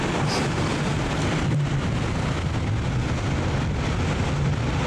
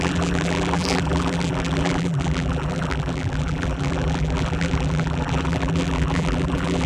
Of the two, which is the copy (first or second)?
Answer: second